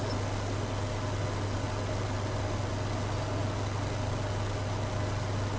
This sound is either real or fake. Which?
real